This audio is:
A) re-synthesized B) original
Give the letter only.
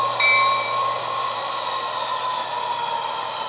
A